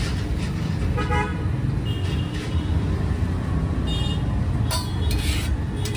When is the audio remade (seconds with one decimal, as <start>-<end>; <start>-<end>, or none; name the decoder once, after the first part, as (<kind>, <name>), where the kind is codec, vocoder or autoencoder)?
0.0-1.3 (vocoder, BigVGAN v2); 4.9-6.0